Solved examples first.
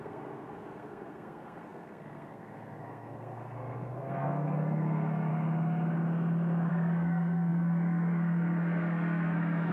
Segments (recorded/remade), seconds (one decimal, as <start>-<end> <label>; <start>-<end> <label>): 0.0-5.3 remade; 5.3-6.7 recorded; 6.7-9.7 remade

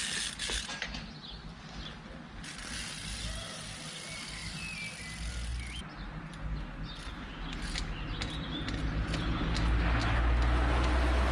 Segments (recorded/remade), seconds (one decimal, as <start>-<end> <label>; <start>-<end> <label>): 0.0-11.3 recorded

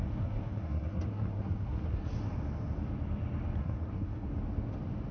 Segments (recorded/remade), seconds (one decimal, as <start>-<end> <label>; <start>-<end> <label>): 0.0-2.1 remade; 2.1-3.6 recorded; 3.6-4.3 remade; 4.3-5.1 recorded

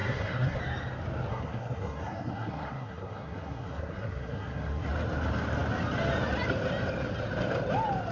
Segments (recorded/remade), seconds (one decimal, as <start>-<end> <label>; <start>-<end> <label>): 0.0-0.6 remade; 0.6-1.3 recorded; 1.3-4.9 remade; 4.9-8.1 recorded